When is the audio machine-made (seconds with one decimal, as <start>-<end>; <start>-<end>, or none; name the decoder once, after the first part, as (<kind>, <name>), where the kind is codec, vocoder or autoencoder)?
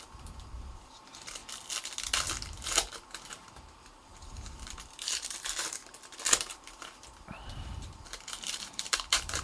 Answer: 0.0-1.4 (vocoder, BigVGAN v2); 2.6-5.8; 6.4-9.4